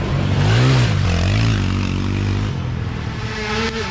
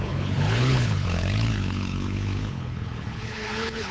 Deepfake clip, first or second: second